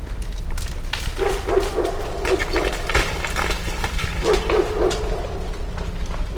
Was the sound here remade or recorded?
recorded